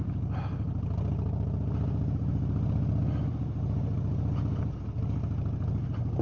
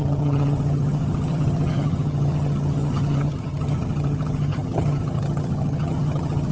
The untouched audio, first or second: first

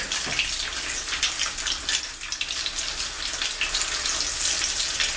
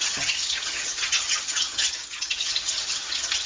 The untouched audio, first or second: first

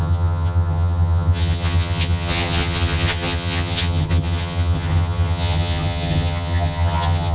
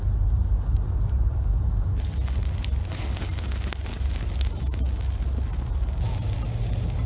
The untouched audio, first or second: second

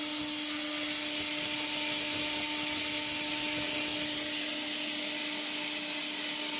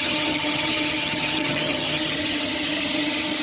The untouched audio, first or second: first